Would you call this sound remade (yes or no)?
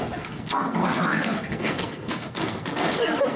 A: yes